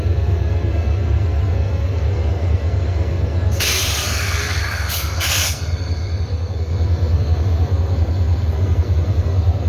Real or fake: fake